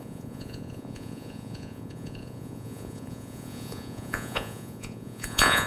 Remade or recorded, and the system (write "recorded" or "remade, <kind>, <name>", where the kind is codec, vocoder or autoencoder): remade, vocoder, Vocos